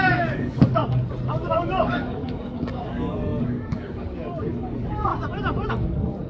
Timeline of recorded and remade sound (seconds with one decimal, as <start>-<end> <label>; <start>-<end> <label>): 0.0-0.8 remade; 0.8-1.3 recorded; 1.3-5.1 remade; 5.1-5.7 recorded; 5.7-6.3 remade